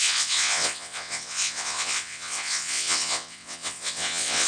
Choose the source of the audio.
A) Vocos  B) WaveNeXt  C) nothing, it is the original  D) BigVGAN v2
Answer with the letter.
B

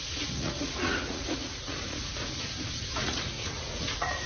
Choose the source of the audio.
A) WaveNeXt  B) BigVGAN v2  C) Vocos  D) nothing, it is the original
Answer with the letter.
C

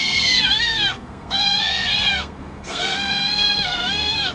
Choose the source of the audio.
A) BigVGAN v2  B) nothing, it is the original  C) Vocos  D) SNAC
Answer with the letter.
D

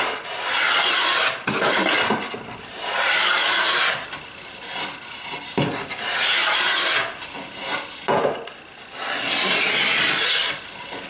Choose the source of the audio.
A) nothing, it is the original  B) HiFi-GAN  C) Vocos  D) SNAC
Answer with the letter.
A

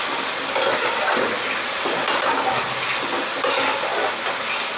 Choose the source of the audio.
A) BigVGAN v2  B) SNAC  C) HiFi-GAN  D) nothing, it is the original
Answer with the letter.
D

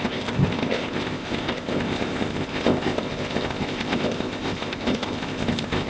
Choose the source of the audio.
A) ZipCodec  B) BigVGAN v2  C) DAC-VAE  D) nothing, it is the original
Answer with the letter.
A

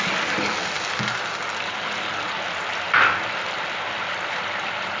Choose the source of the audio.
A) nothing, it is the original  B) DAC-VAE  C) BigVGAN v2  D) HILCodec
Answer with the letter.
A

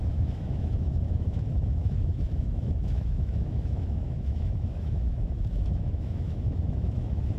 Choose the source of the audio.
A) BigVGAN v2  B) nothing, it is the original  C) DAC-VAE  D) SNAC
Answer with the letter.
C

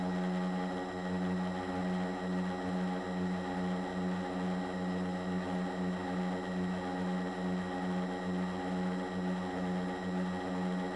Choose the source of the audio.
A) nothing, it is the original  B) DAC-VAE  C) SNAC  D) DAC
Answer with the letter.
A